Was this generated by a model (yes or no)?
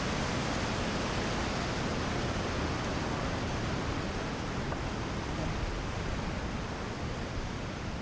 no